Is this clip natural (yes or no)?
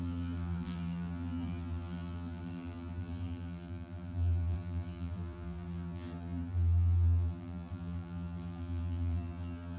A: no